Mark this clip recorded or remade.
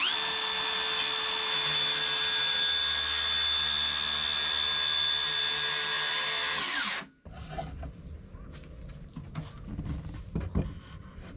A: recorded